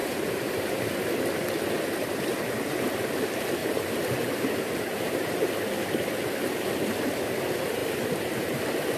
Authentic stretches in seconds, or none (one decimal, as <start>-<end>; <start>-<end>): 0.8-3.6; 5.5-7.8; 8.6-9.0

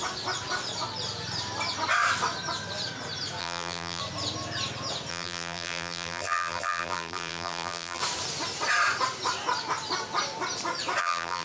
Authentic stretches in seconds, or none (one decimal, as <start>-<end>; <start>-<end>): 0.0-3.4; 4.0-5.1; 8.0-11.0

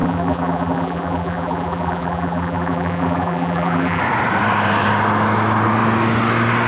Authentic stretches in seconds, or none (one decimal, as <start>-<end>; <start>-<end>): 4.0-6.7